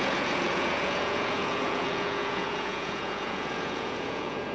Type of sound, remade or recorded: remade